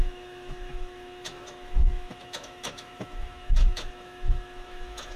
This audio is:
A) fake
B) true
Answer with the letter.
A